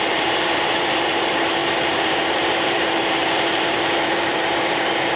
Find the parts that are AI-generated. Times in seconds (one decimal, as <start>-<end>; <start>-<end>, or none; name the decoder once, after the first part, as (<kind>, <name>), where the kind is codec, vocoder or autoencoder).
0.0-5.2 (vocoder, BigVGAN v2)